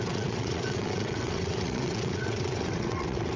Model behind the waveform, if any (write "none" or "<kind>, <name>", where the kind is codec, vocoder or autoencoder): vocoder, WaveNeXt